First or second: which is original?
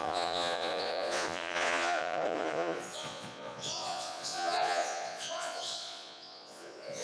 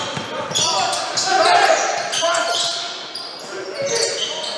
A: second